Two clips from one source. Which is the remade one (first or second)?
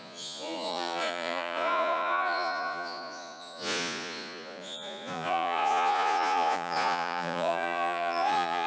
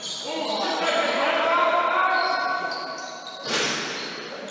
first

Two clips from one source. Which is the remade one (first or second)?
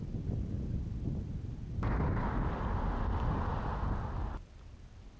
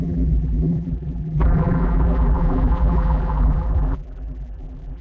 second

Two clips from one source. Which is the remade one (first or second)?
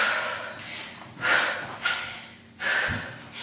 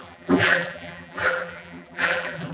second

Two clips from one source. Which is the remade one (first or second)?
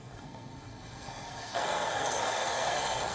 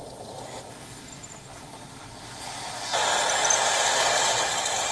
first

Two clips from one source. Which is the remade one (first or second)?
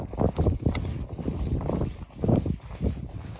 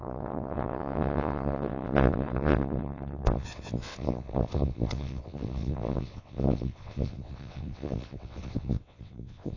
second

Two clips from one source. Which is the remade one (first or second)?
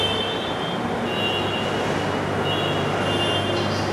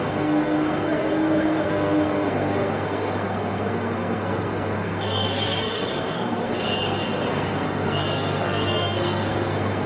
second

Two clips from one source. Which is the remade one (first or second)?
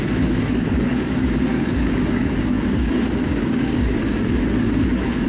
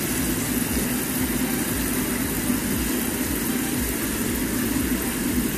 first